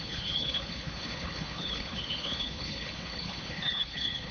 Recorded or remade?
remade